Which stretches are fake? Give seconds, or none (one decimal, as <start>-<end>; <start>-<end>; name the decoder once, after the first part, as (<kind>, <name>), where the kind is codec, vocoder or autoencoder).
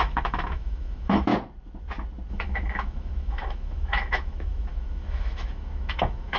0.0-1.3 (autoencoder, DAC-VAE); 2.3-6.4